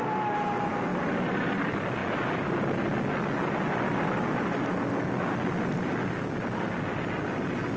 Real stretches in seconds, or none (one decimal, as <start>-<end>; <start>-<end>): 0.0-7.8